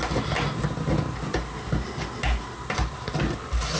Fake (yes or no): no